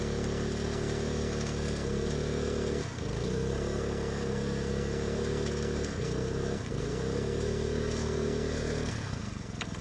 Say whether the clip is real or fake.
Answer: fake